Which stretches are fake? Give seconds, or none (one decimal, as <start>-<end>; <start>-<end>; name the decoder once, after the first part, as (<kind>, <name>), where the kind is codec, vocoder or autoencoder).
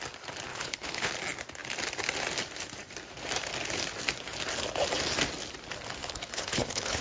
0.5-1.1 (codec, HILCodec); 6.0-7.0